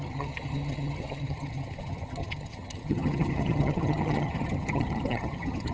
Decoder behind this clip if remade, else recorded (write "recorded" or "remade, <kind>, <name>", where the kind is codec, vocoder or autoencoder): remade, vocoder, HiFi-GAN